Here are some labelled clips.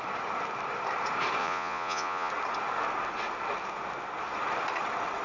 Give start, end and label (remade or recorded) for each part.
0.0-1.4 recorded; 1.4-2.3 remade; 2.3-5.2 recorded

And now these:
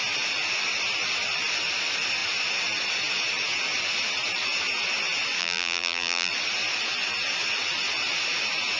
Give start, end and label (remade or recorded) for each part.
0.0-5.4 recorded; 5.4-6.3 remade; 6.3-8.8 recorded